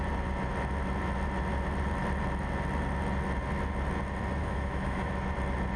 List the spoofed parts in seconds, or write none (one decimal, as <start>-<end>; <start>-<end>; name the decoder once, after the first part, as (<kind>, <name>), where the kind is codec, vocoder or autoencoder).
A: 4.4-5.1 (autoencoder, DAC-VAE)